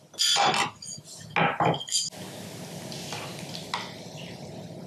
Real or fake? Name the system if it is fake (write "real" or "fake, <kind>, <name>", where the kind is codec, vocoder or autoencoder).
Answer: real